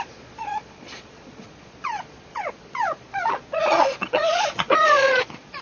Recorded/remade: remade